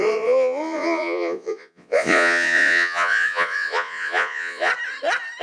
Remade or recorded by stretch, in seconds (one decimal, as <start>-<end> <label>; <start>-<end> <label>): 0.0-4.7 remade; 4.7-5.4 recorded